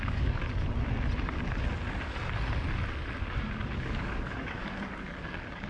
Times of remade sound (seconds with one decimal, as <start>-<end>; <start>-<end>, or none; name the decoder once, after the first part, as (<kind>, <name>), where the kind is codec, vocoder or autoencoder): 0.0-0.4 (codec, DAC); 3.8-5.7